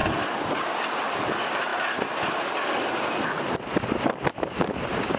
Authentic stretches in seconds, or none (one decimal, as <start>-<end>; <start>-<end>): 0.0-5.2